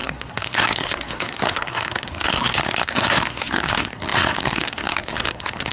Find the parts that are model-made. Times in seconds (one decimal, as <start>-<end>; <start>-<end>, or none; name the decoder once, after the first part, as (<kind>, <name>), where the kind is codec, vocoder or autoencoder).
0.0-5.7 (codec, SNAC)